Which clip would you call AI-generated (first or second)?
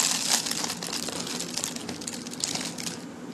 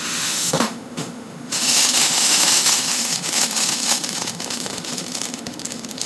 second